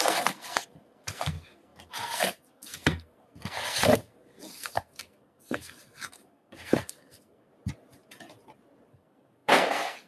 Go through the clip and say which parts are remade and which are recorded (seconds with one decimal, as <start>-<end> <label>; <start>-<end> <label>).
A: 0.0-7.5 remade; 7.5-8.9 recorded; 8.9-10.1 remade

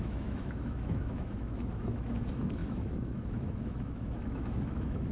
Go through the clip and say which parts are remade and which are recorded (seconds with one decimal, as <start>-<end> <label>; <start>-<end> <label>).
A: 0.0-5.1 remade

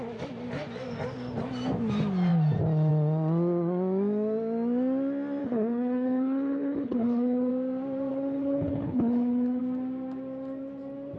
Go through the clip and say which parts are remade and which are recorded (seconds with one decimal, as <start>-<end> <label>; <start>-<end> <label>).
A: 0.0-5.4 recorded; 5.4-7.5 remade; 7.5-8.1 recorded; 8.1-9.6 remade; 9.6-11.2 recorded

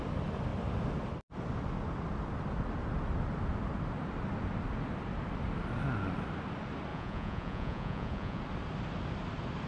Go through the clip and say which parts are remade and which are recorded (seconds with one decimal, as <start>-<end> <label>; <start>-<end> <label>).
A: 0.0-6.9 recorded; 6.9-8.4 remade; 8.4-9.7 recorded